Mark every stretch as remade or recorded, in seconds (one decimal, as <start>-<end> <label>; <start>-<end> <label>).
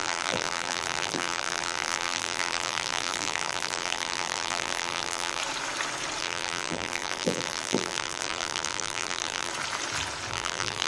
0.0-5.4 remade; 5.4-6.2 recorded; 6.2-9.5 remade; 9.5-10.3 recorded; 10.3-10.9 remade